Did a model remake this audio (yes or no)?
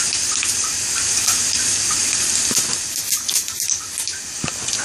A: no